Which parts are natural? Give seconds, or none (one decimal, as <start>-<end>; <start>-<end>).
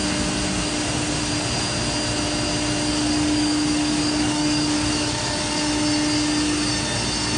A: 0.0-2.9; 5.7-7.4